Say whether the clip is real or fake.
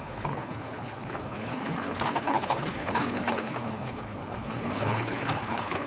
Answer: fake